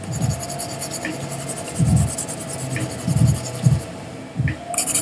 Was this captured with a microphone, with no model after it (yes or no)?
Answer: yes